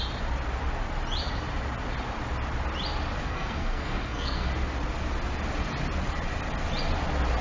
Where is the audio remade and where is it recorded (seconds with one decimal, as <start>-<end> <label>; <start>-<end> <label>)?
0.0-3.2 recorded; 3.2-4.5 remade; 4.5-7.4 recorded